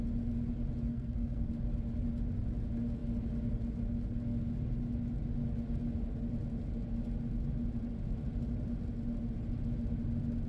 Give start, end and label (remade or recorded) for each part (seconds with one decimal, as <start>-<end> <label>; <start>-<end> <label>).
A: 0.0-0.9 recorded; 0.9-1.5 remade; 1.5-10.5 recorded